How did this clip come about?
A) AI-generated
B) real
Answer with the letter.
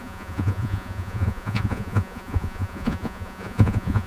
A